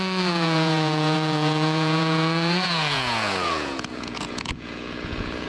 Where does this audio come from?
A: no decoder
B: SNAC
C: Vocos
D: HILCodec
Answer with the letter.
C